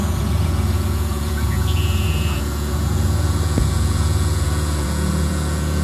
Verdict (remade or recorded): remade